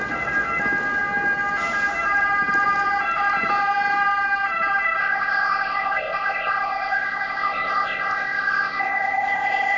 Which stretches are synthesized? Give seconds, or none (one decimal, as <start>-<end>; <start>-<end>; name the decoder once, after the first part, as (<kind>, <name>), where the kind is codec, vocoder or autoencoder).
5.0-9.8 (codec, ZipCodec)